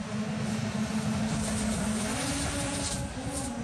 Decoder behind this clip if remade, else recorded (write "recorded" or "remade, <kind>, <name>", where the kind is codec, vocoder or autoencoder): recorded